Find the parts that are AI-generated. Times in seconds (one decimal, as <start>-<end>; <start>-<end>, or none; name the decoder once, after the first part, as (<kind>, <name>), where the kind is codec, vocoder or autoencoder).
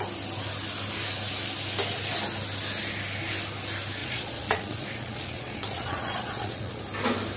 4.0-6.8 (vocoder, Vocos)